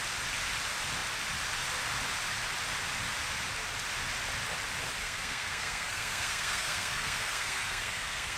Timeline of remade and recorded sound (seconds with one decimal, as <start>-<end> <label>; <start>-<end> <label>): 0.0-5.0 recorded; 5.0-8.4 remade